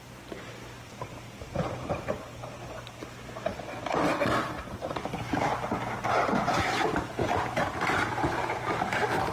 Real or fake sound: fake